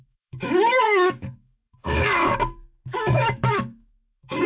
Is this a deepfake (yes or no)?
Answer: yes